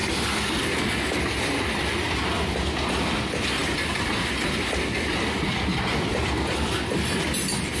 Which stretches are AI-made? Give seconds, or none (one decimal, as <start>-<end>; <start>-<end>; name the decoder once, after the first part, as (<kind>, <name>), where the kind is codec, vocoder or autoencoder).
0.6-7.8 (vocoder, BigVGAN v2)